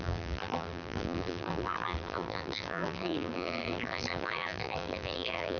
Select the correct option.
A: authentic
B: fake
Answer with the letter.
B